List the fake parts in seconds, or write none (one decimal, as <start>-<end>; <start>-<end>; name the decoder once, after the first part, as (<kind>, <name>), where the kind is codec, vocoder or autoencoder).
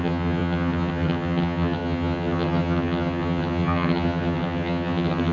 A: 0.0-5.3 (vocoder, HiFi-GAN)